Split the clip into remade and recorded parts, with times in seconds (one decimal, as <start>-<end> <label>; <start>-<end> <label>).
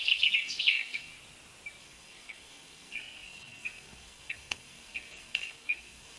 0.0-1.1 remade; 1.1-1.8 recorded; 1.8-6.2 remade